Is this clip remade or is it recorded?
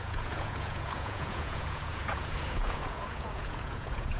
remade